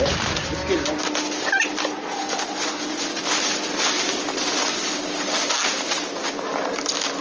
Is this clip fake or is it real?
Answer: real